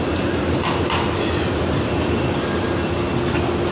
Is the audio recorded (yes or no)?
yes